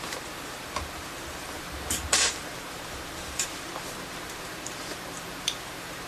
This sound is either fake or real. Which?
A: fake